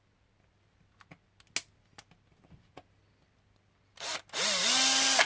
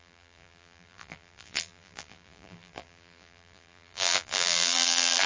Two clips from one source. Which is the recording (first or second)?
first